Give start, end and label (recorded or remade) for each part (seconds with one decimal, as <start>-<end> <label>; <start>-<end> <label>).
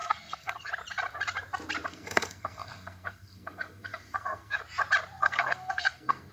0.0-0.7 remade; 0.7-1.9 recorded; 1.9-4.6 remade; 4.6-5.2 recorded; 5.2-6.3 remade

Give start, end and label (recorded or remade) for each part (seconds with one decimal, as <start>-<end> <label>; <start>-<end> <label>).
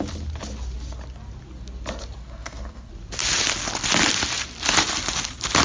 0.0-2.2 recorded; 2.2-2.9 remade; 2.9-5.6 recorded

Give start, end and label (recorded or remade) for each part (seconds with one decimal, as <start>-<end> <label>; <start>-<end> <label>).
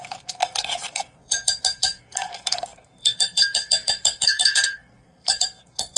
0.0-6.0 remade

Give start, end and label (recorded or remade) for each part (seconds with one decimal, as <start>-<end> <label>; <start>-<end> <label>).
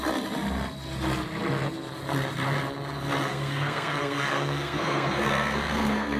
0.0-3.3 recorded; 3.3-6.2 remade